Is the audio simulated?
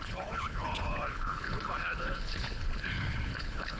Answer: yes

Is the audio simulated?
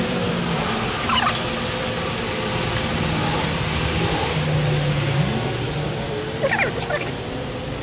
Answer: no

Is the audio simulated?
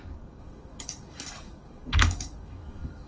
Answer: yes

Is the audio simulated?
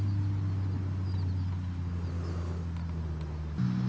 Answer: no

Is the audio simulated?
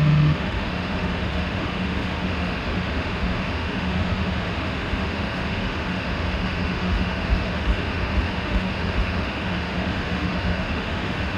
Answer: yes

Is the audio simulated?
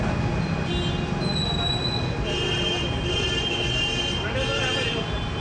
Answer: no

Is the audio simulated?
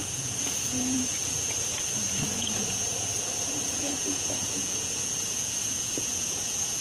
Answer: yes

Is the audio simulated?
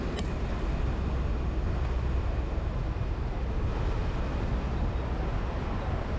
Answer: no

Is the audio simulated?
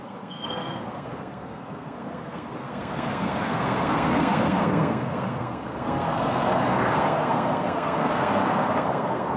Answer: yes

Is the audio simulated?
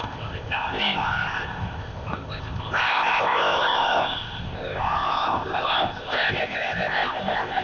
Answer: yes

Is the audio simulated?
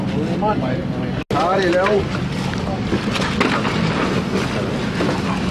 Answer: no